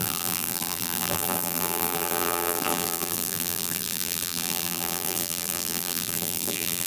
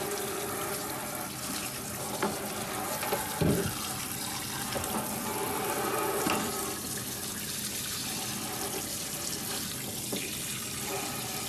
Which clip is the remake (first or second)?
first